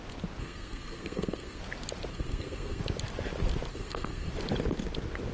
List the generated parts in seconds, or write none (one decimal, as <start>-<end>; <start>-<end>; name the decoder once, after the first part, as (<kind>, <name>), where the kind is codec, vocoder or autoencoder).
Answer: 0.4-1.6 (codec, SNAC); 2.1-2.8; 3.7-4.3